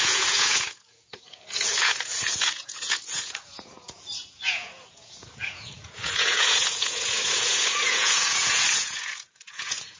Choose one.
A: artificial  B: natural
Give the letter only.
A